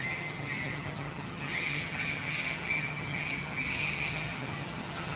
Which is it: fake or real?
fake